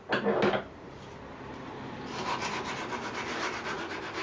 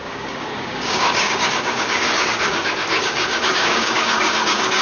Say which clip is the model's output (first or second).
second